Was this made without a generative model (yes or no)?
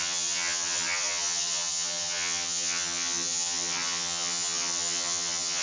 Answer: no